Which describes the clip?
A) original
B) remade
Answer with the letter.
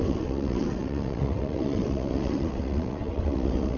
B